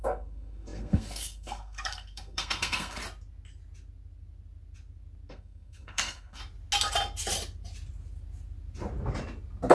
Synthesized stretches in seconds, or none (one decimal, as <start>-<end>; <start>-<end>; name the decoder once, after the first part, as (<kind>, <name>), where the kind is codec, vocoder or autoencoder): 0.0-3.0 (codec, SNAC); 5.3-6.4